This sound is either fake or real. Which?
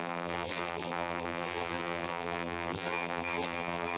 fake